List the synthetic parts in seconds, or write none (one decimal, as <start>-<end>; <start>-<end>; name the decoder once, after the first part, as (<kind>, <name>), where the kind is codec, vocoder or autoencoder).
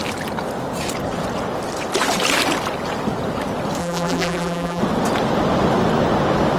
3.8-4.8 (vocoder, BigVGAN v2)